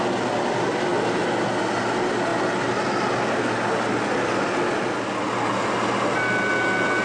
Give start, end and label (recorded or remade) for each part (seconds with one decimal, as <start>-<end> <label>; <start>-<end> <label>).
0.0-7.0 recorded

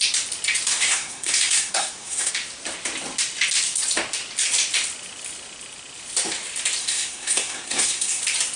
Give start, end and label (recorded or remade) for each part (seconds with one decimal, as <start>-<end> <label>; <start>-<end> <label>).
0.0-0.7 recorded; 0.7-2.3 remade; 2.3-6.8 recorded; 6.8-8.2 remade; 8.2-8.6 recorded

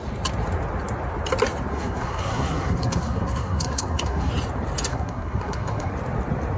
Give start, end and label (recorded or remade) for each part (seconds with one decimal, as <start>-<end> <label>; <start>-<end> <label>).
0.0-1.7 recorded; 1.7-4.3 remade; 4.3-4.9 recorded; 4.9-5.9 remade; 5.9-6.6 recorded

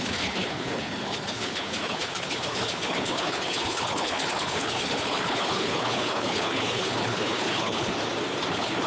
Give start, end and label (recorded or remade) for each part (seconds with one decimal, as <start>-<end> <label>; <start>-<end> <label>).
0.0-7.9 remade; 7.9-8.5 recorded; 8.5-8.9 remade

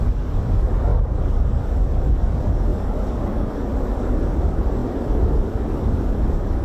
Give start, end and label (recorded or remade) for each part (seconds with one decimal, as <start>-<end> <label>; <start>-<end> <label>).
0.0-6.6 remade